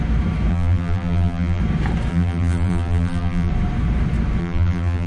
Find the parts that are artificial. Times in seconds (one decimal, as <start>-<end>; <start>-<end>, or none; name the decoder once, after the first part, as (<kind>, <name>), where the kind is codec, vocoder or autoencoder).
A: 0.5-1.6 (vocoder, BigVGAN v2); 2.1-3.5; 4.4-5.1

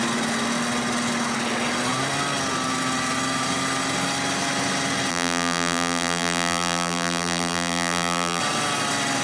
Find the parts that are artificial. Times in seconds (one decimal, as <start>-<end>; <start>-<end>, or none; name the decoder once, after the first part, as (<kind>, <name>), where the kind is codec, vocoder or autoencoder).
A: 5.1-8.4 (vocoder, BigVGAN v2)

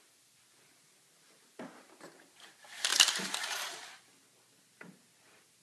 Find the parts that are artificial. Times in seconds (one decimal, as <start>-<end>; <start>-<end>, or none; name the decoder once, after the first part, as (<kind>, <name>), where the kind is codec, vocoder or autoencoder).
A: 2.9-4.2 (vocoder, BigVGAN v2)